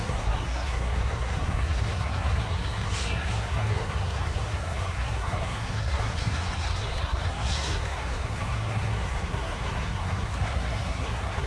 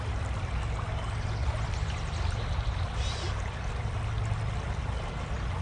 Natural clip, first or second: second